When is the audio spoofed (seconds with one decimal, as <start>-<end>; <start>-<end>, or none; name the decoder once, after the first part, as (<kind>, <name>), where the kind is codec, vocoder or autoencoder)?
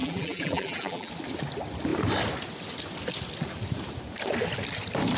0.0-1.1 (vocoder, BigVGAN v2)